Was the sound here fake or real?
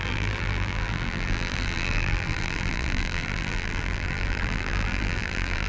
fake